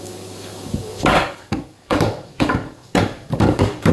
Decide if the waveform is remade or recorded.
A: remade